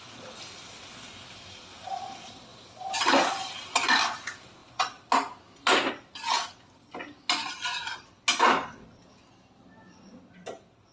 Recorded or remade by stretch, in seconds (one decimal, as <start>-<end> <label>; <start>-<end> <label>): 0.0-2.5 recorded; 2.5-3.5 remade; 3.5-10.9 recorded